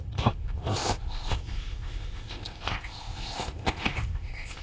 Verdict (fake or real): fake